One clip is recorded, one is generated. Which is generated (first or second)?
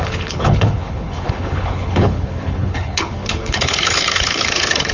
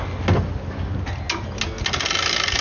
first